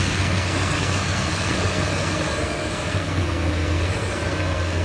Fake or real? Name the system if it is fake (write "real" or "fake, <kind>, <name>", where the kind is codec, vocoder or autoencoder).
fake, codec, SNAC